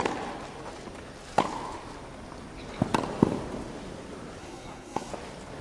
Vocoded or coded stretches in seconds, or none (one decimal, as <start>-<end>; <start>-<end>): 4.4-5.1